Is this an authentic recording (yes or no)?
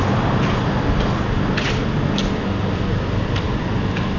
yes